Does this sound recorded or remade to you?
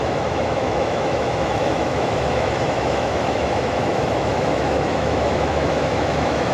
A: remade